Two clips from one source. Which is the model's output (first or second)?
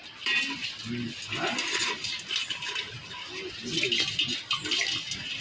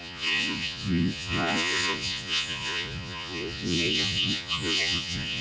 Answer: second